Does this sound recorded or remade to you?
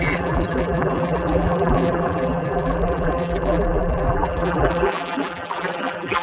remade